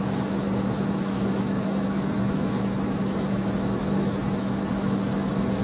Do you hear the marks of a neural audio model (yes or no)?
yes